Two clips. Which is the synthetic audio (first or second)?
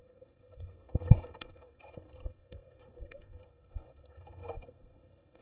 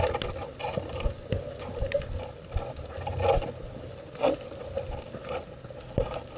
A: first